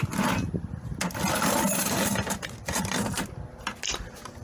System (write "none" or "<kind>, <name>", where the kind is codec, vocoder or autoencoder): none